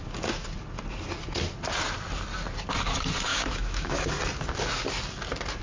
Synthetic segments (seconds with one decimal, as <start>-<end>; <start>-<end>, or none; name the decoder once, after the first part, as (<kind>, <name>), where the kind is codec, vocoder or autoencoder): 3.3-4.1 (autoencoder, DAC-VAE)

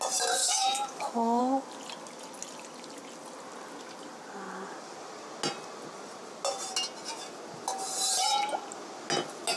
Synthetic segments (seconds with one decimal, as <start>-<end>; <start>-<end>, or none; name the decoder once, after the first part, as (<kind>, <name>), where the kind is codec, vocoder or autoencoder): 0.4-1.4 (autoencoder, DAC-VAE)

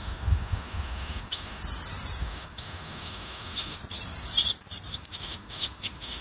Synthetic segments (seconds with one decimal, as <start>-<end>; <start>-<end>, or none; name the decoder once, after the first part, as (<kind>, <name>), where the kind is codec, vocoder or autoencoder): 0.0-1.6 (autoencoder, DAC-VAE); 2.2-3.8; 4.9-6.2

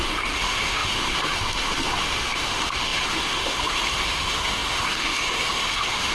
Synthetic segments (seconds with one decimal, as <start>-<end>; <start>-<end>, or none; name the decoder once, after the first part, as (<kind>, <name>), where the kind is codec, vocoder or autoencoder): 0.0-6.1 (autoencoder, DAC-VAE)